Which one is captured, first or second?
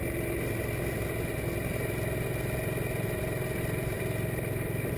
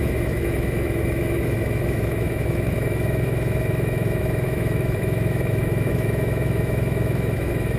first